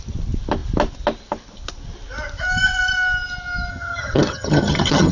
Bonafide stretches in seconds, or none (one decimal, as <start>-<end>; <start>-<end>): 0.0-3.7